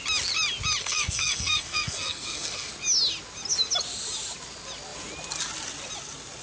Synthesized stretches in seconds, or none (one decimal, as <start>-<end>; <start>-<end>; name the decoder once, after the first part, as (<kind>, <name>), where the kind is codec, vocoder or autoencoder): 0.8-2.7 (codec, SNAC)